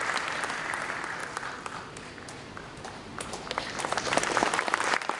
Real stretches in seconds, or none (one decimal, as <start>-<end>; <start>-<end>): 0.0-1.2; 1.9-5.2